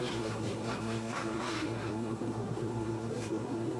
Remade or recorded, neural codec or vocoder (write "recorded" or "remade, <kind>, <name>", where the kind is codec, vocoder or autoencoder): remade, codec, SNAC